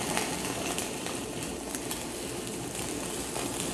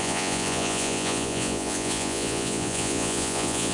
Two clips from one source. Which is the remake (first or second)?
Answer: second